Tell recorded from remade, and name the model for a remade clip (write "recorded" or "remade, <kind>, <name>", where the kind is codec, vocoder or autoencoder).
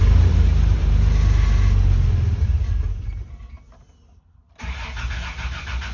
recorded